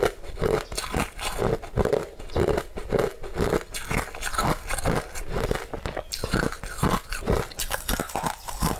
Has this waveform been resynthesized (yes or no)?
no